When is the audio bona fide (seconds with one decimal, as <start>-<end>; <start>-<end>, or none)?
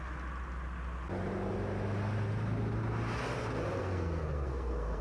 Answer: 0.0-3.8